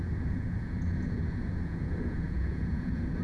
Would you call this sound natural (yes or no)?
no